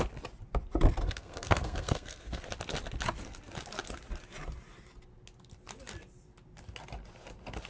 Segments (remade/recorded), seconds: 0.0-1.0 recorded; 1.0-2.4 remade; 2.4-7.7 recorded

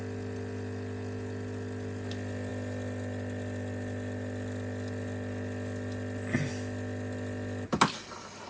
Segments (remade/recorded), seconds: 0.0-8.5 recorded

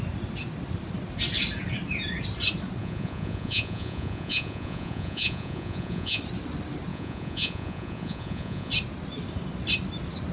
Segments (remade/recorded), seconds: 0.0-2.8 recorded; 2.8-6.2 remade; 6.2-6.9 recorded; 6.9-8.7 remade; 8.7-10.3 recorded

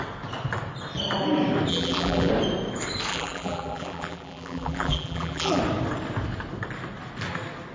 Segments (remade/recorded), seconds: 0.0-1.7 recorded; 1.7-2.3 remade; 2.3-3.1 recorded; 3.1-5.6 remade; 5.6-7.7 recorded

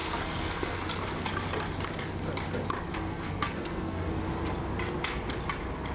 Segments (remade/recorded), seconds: 0.0-0.8 remade; 0.8-2.9 recorded; 2.9-4.2 remade; 4.2-5.9 recorded

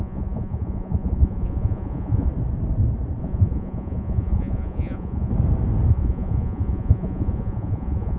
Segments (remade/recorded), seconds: 0.0-2.3 remade; 2.3-3.2 recorded; 3.2-5.3 remade; 5.3-5.9 recorded; 5.9-8.2 remade

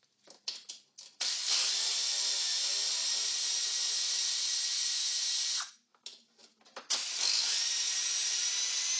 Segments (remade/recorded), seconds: 0.0-9.0 recorded